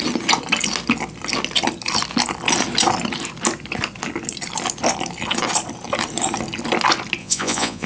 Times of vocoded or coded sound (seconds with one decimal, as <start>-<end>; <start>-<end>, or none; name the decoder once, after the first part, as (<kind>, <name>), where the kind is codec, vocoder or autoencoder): 7.2-7.9 (vocoder, Vocos)